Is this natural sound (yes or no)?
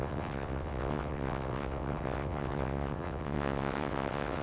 no